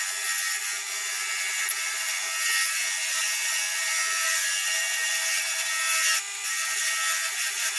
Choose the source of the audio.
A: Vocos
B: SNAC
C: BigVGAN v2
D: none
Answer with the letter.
D